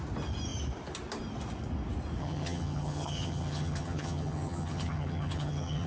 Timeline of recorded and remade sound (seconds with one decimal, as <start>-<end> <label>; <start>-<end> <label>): 0.0-2.2 recorded; 2.2-5.9 remade